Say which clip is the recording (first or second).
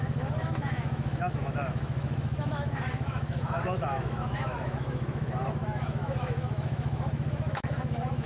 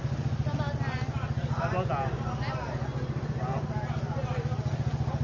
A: second